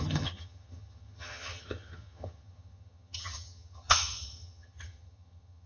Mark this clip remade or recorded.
remade